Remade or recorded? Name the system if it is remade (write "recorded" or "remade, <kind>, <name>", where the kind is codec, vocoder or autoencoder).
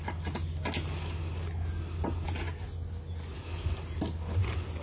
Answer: recorded